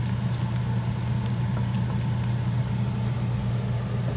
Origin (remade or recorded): recorded